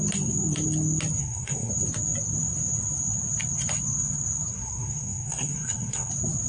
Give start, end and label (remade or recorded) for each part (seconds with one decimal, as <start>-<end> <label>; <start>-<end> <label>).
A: 0.0-1.2 recorded; 1.2-1.7 remade; 1.7-4.5 recorded; 4.5-6.1 remade; 6.1-6.5 recorded